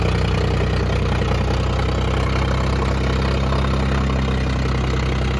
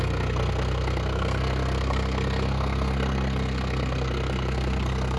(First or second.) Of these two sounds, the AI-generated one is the second